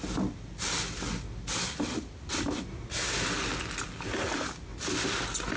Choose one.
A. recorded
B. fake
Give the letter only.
A